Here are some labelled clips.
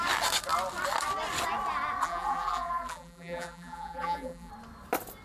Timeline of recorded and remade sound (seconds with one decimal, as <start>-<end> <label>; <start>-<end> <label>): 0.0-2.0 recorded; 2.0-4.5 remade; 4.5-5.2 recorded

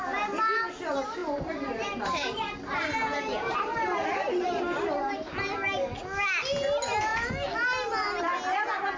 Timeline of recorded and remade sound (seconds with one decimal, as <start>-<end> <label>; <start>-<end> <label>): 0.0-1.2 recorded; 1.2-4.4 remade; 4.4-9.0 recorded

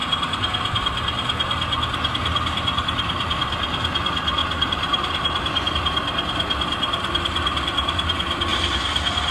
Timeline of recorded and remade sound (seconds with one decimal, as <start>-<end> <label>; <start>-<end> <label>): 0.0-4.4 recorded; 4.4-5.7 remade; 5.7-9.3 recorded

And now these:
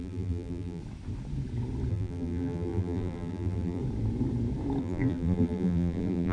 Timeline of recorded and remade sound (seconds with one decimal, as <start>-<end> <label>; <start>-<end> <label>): 0.0-0.8 remade; 0.8-1.9 recorded; 1.9-3.8 remade; 3.8-4.8 recorded; 4.8-6.3 remade

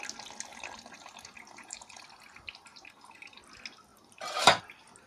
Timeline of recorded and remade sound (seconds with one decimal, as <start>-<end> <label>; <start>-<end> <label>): 0.0-0.5 recorded; 0.5-2.0 remade; 2.0-2.7 recorded; 2.7-3.4 remade; 3.4-3.9 recorded; 3.9-4.6 remade; 4.6-5.1 recorded